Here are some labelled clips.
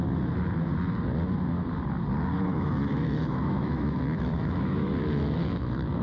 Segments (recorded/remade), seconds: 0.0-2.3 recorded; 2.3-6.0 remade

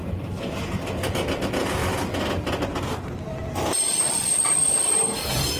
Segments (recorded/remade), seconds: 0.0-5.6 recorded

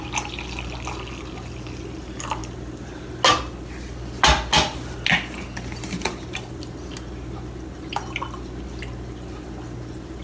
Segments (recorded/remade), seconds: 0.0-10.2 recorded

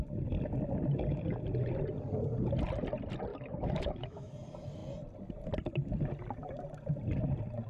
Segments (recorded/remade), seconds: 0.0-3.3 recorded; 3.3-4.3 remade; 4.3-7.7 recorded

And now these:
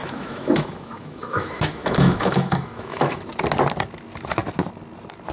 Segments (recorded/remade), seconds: 0.0-3.2 remade; 3.2-5.3 recorded

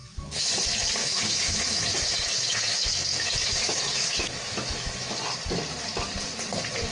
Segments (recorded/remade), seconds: 0.0-0.5 remade; 0.5-1.0 recorded; 1.0-5.1 remade; 5.1-6.9 recorded

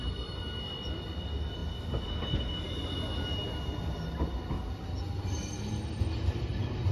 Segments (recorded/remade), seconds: 0.0-6.9 recorded